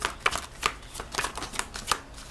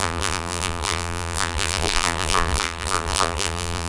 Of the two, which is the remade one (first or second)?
second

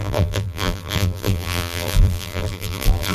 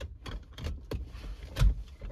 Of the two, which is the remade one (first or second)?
first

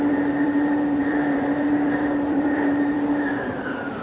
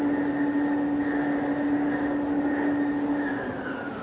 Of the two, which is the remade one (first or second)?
first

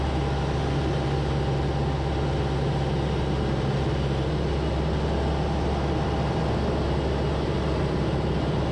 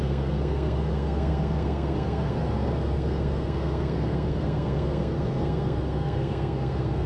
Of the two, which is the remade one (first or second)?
second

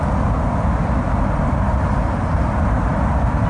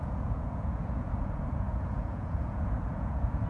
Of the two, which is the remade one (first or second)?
second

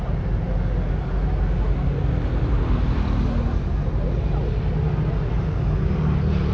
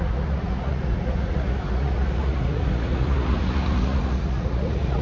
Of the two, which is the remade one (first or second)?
second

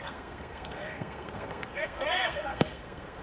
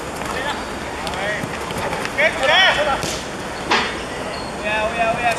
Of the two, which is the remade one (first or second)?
first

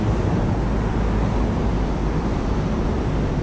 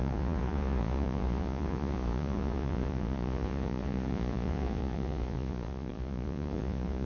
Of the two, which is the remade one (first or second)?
second